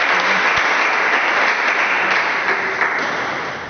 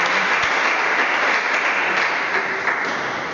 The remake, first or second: first